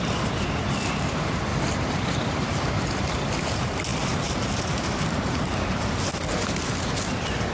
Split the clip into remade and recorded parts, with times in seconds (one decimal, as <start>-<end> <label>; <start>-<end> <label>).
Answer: 0.0-7.5 recorded